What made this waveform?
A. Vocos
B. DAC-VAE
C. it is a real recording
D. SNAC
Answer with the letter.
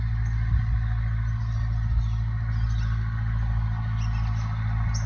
C